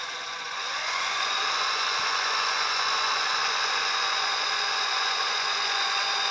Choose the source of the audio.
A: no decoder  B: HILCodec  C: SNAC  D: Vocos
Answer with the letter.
D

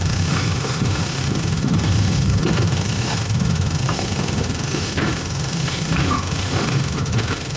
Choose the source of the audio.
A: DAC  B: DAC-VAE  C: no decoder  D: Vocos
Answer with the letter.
B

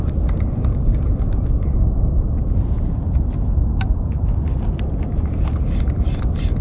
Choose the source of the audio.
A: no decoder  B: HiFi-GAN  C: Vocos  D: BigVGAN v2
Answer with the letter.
A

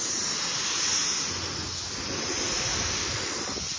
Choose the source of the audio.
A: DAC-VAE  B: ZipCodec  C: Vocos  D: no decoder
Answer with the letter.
D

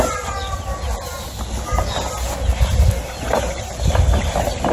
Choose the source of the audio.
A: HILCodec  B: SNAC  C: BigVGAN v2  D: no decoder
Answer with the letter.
D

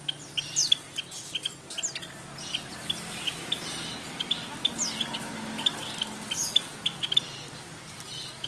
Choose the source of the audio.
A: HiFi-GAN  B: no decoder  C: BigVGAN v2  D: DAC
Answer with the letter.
B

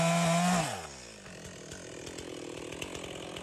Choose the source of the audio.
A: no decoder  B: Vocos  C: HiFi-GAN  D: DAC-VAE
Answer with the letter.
A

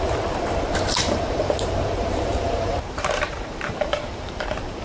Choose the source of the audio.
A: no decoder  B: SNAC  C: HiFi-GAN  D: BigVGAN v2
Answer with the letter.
D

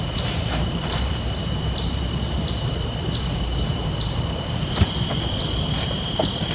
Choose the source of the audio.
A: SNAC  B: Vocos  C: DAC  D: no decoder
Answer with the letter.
D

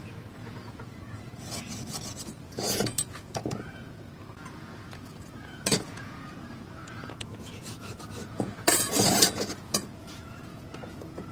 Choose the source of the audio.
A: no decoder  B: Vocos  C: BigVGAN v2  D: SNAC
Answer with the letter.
B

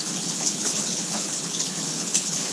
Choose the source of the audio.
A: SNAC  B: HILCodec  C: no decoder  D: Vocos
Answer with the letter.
B